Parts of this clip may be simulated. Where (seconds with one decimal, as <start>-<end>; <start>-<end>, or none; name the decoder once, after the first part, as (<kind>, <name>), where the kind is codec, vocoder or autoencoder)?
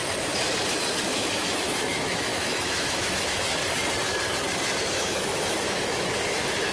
1.0-3.6 (autoencoder, DAC-VAE); 4.8-6.7